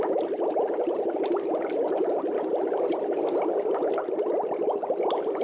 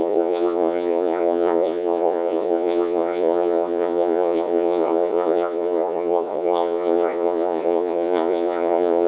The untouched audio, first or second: first